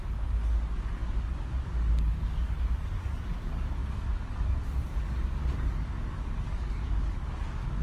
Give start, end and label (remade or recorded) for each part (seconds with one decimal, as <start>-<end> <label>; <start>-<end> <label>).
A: 0.0-7.8 remade